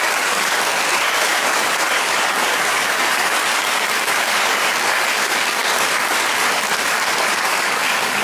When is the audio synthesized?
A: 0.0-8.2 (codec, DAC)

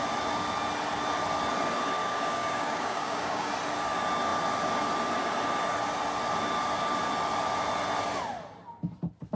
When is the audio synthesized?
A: 2.0-3.5 (codec, DAC)

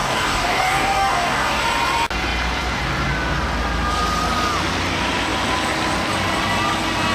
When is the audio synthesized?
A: 0.0-1.6 (codec, DAC)

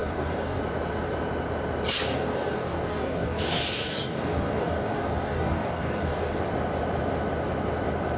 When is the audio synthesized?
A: 0.0-0.6 (codec, DAC); 2.1-6.5

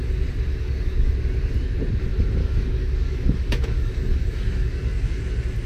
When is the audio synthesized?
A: 0.5-1.1 (codec, DAC); 2.4-5.2